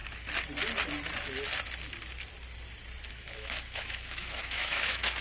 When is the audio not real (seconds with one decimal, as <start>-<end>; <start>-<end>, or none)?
3.1-5.2